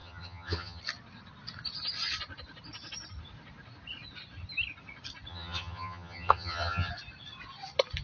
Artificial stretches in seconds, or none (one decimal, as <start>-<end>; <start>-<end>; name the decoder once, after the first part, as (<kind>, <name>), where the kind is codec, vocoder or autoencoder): 0.0-0.8 (vocoder, HiFi-GAN); 5.3-6.9